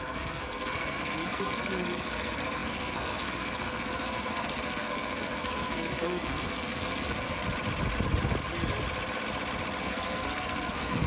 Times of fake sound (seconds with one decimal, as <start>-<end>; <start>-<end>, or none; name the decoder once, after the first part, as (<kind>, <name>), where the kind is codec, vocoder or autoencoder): 0.0-7.4 (codec, SNAC); 9.8-11.1